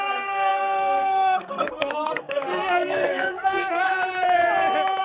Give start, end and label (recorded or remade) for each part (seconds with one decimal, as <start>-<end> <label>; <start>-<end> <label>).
0.0-3.9 remade; 3.9-5.0 recorded